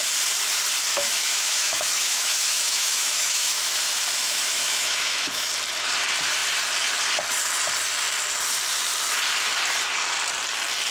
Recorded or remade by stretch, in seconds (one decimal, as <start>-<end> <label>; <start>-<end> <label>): 0.0-0.9 recorded; 0.9-3.8 remade; 3.8-4.2 recorded; 4.2-5.5 remade; 5.5-10.9 recorded